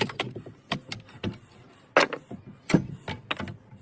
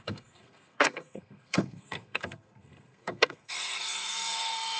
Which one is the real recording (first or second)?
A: first